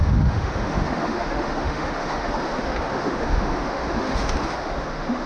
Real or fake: fake